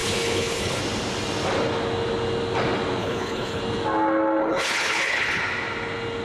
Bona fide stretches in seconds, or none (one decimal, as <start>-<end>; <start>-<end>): 0.8-3.0; 3.6-4.4; 5.4-6.2